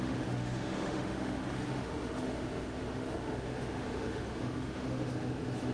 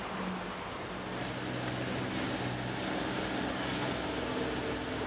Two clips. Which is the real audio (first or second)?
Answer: second